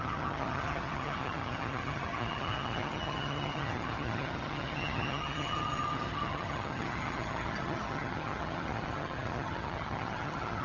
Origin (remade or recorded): remade